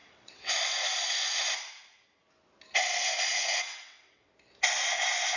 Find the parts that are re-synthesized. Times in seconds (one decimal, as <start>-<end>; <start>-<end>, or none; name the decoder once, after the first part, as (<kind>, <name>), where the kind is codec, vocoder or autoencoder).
0.0-0.5 (vocoder, WaveNeXt); 3.3-4.3